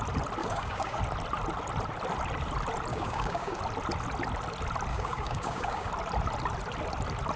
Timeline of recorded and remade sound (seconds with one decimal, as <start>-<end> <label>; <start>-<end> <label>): 0.0-0.4 recorded; 0.4-1.0 remade; 1.0-2.9 recorded; 2.9-3.6 remade; 3.6-4.9 recorded; 4.9-5.9 remade; 5.9-7.4 recorded